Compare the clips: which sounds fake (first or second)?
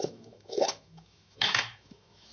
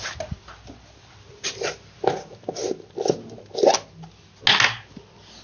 first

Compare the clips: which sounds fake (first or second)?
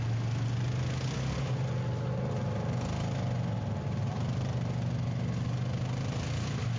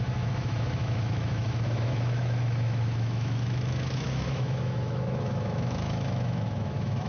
second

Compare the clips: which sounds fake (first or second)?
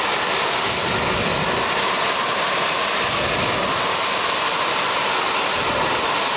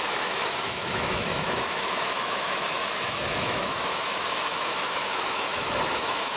second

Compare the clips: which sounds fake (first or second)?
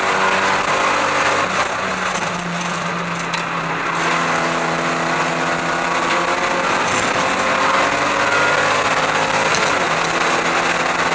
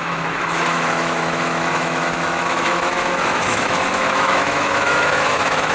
second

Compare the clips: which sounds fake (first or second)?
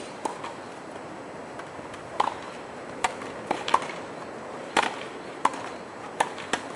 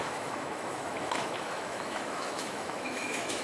second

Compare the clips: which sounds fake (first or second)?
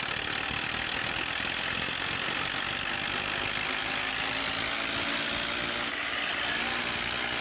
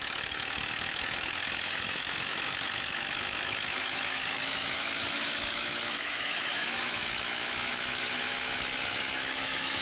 second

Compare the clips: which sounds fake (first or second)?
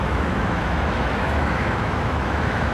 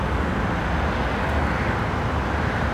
first